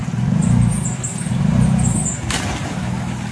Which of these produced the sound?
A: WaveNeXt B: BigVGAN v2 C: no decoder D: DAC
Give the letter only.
C